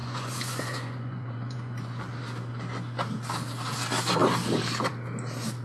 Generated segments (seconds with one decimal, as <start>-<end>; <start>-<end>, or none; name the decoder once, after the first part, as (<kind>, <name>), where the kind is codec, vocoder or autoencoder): 0.0-2.0 (vocoder, Vocos)